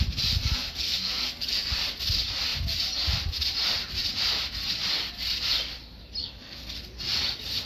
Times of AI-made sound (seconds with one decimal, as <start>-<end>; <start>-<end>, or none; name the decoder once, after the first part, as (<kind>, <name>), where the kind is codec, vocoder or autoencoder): 0.4-1.7 (codec, SNAC); 6.2-6.7